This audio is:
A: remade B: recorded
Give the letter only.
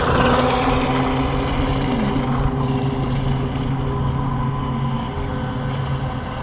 B